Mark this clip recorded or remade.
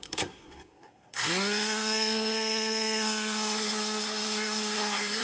remade